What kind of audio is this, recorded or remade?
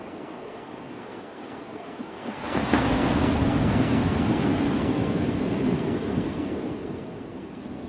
remade